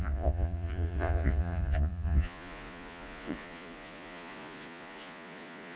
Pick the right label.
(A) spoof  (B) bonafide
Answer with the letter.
A